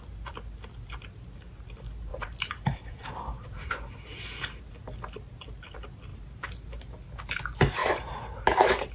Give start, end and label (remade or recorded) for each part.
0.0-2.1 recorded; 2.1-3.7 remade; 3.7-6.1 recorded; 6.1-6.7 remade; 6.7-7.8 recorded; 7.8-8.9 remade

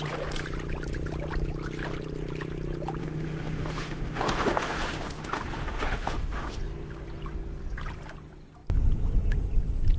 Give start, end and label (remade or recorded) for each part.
0.0-3.0 recorded; 3.0-6.6 remade; 6.6-10.0 recorded

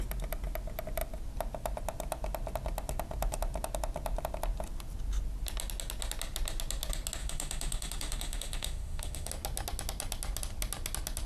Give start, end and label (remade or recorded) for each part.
0.0-7.2 recorded; 7.2-9.3 remade; 9.3-11.3 recorded

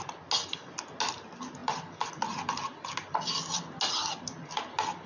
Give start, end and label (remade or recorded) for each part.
0.0-5.1 recorded

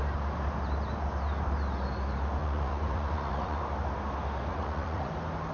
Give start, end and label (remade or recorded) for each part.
0.0-2.4 recorded; 2.4-3.6 remade; 3.6-4.5 recorded; 4.5-5.1 remade; 5.1-5.5 recorded

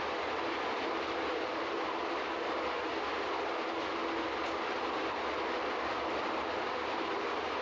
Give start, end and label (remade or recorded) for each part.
0.0-4.0 remade; 4.0-7.6 recorded

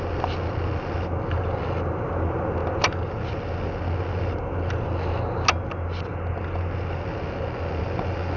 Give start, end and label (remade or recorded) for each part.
0.0-8.4 recorded